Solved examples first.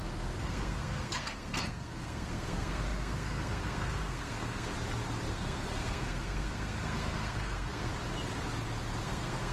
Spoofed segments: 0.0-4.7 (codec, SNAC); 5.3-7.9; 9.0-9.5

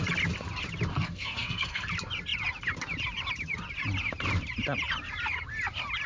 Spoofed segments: 0.9-1.9 (codec, SNAC)

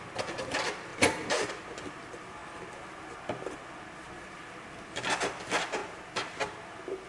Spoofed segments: none

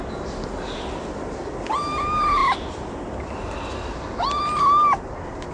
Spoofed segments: none

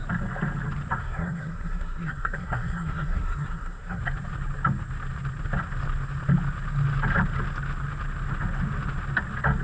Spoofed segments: 1.0-4.0 (codec, SNAC)

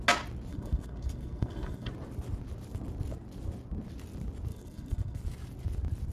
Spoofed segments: 0.5-1.9 (codec, SNAC); 4.5-5.2